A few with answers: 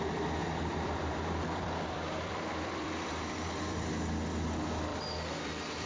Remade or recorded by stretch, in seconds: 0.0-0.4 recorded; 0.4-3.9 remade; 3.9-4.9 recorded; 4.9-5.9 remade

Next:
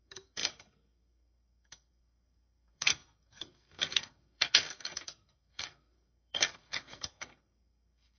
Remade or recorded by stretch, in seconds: 0.0-8.2 remade

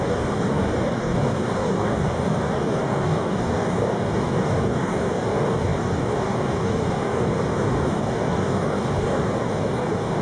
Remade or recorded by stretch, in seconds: 0.0-10.2 remade